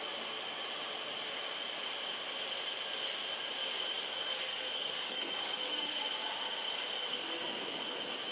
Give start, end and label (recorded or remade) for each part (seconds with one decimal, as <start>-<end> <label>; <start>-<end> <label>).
0.0-4.5 recorded; 4.5-6.0 remade; 6.0-8.3 recorded